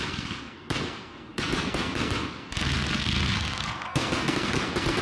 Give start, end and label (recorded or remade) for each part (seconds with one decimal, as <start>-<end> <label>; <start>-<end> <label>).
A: 0.0-5.0 remade